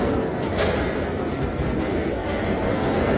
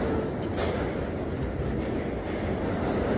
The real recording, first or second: second